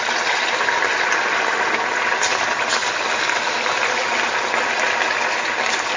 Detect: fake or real real